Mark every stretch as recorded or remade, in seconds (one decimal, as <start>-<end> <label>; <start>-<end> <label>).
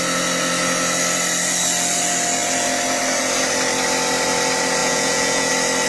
0.0-4.8 recorded; 4.8-5.5 remade; 5.5-5.9 recorded